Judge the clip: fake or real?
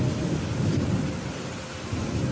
real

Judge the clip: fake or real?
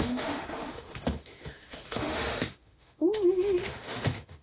fake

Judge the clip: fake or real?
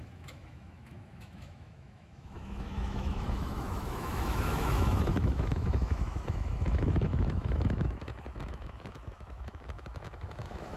fake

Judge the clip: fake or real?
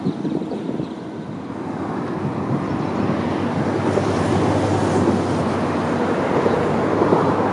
real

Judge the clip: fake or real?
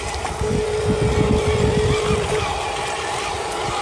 real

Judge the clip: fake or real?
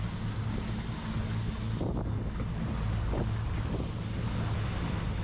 real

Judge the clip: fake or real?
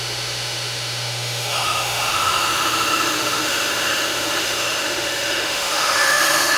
fake